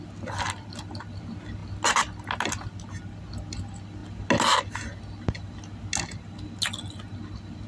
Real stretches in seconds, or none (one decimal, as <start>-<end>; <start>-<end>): 0.0-7.7